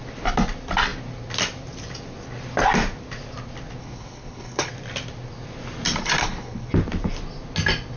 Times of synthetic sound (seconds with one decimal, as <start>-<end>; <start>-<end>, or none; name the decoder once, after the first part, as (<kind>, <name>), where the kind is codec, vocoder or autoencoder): 3.8-4.7 (codec, HILCodec); 6.2-6.7